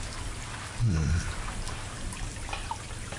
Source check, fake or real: real